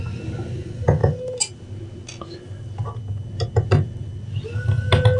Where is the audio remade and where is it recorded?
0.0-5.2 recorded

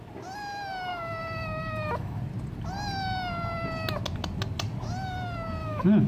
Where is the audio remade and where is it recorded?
0.0-0.9 recorded; 0.9-2.2 remade; 2.2-5.6 recorded; 5.6-6.1 remade

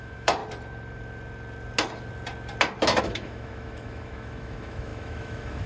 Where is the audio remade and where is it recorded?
0.0-0.4 remade; 0.4-3.0 recorded; 3.0-5.7 remade

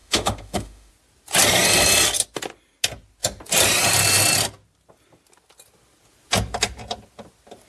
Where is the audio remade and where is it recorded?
0.0-0.9 remade; 0.9-7.7 recorded

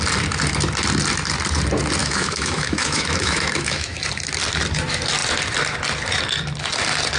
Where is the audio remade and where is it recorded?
0.0-2.0 recorded; 2.0-4.0 remade; 4.0-7.2 recorded

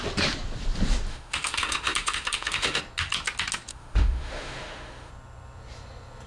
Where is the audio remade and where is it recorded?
0.0-1.1 recorded; 1.1-2.8 remade; 2.8-3.7 recorded; 3.7-5.1 remade; 5.1-6.3 recorded

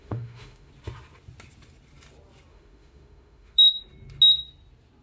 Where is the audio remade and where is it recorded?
0.0-0.7 remade; 0.7-2.5 recorded; 2.5-3.8 remade; 3.8-5.0 recorded

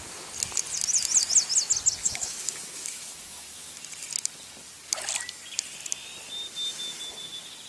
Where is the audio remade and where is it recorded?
0.0-2.0 recorded; 2.0-3.8 remade; 3.8-7.7 recorded